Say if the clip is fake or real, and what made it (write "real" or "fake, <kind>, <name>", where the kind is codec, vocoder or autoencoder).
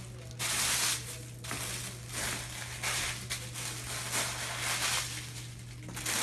real